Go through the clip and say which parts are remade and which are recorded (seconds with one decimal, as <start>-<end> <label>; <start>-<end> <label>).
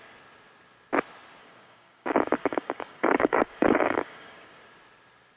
0.0-1.4 recorded; 1.4-4.6 remade; 4.6-5.4 recorded